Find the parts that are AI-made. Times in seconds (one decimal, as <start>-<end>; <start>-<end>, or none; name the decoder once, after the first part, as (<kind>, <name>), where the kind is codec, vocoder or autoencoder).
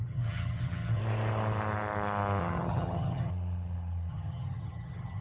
0.0-1.0 (vocoder, HiFi-GAN); 2.4-3.3; 4.1-5.2